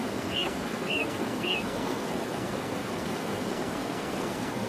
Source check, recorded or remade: remade